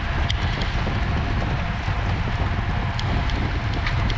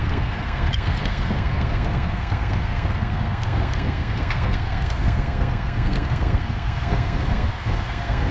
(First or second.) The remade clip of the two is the second